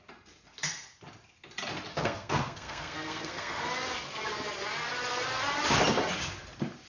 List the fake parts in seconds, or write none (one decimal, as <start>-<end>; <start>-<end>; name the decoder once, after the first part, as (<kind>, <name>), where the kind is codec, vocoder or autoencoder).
1.9-3.7 (codec, SNAC)